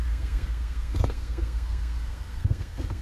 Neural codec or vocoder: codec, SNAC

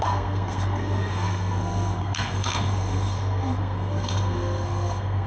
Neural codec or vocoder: codec, SNAC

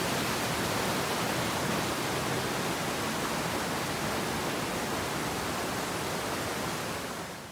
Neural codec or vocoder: none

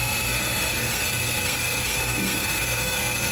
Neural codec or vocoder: codec, SNAC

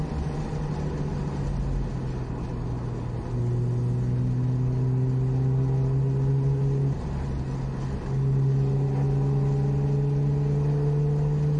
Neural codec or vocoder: none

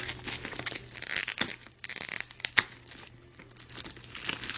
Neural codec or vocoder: none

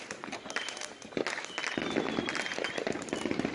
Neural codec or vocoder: none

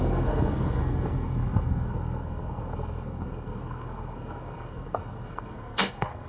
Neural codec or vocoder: codec, SNAC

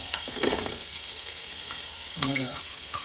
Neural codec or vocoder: codec, SNAC